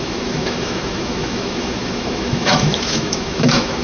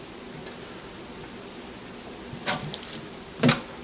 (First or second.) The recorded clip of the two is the second